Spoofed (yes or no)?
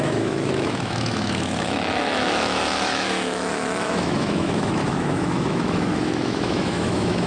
yes